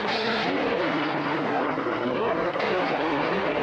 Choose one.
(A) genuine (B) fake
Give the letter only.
B